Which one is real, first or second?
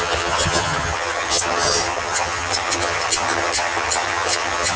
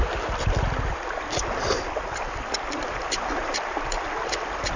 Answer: second